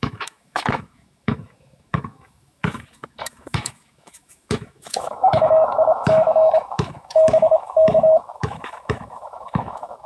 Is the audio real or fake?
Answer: fake